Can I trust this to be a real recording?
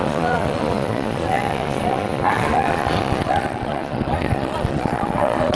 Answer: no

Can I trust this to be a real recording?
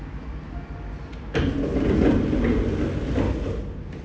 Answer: yes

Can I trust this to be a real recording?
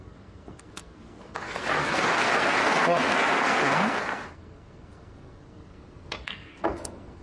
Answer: no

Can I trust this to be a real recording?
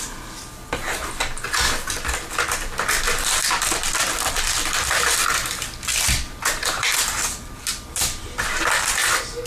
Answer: no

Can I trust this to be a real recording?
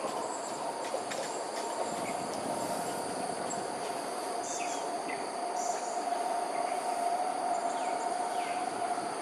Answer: yes